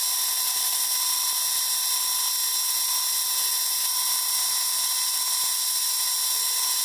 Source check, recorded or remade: recorded